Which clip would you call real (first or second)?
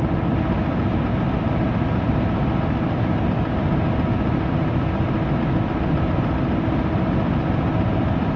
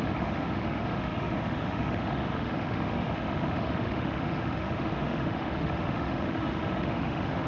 first